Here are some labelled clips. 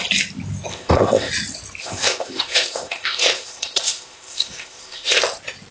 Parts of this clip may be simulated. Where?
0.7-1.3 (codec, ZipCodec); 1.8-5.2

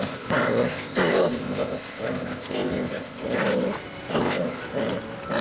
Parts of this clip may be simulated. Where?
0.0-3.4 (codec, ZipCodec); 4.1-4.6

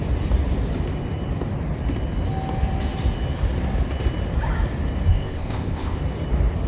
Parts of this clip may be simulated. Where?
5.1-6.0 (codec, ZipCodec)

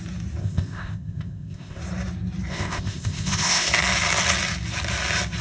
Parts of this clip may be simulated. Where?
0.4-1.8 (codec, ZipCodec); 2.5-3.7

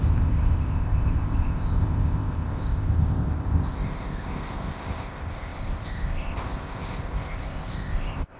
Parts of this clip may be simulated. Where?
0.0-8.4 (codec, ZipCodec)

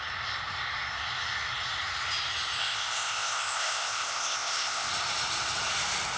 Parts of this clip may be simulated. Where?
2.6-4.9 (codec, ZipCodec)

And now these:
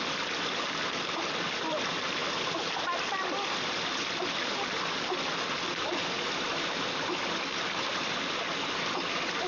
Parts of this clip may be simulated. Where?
none